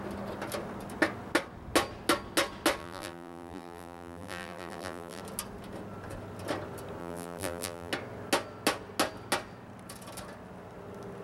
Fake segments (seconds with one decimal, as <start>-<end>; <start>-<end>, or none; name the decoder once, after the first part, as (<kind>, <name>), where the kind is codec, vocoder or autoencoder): 2.8-5.2 (vocoder, BigVGAN v2); 7.0-7.9